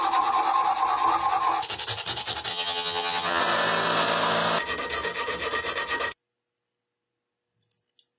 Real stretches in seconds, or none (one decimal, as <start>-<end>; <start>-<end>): 0.0-2.5; 3.4-8.2